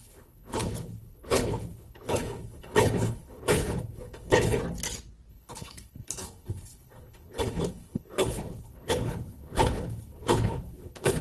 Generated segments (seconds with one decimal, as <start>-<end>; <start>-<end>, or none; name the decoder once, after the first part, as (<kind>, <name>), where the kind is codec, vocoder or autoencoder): 0.0-4.6 (codec, HILCodec); 5.3-11.2